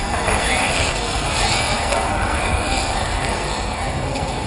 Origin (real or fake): fake